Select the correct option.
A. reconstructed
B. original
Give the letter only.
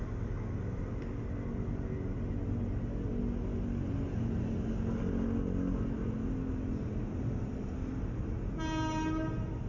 B